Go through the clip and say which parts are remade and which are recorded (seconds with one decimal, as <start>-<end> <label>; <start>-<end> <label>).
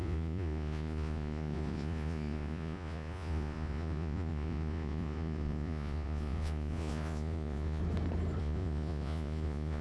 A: 0.0-7.8 remade; 7.8-8.4 recorded; 8.4-9.8 remade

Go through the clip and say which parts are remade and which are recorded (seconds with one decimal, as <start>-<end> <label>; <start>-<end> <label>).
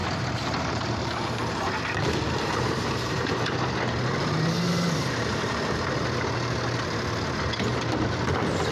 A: 0.0-3.5 remade; 3.5-8.7 recorded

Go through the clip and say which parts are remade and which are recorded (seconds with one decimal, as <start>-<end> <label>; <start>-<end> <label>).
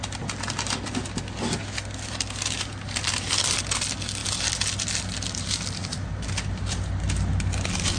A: 0.0-8.0 recorded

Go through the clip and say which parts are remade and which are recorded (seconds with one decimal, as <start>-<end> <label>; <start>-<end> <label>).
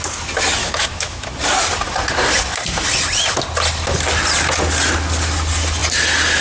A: 0.0-0.6 recorded; 0.6-1.3 remade; 1.3-6.4 recorded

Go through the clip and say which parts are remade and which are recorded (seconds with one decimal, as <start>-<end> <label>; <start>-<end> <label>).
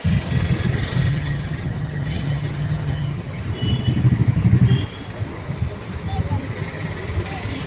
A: 0.0-1.1 recorded; 1.1-3.4 remade; 3.4-7.7 recorded